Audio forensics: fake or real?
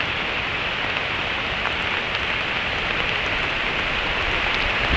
real